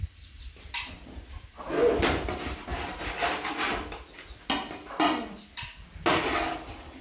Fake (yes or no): no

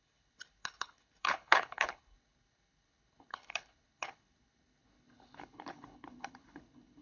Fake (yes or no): yes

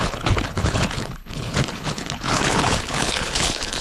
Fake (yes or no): yes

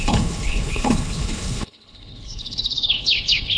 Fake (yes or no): yes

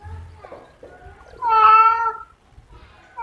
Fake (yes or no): no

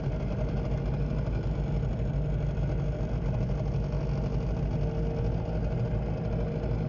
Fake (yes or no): no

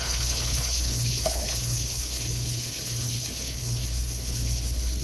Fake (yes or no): yes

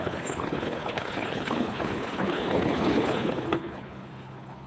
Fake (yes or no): yes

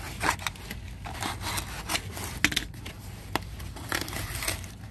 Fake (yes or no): no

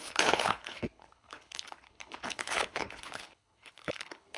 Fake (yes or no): yes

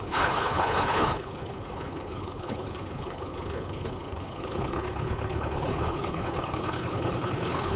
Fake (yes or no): yes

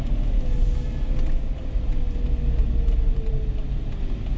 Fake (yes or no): no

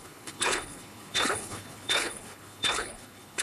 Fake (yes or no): yes